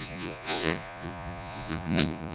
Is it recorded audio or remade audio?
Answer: remade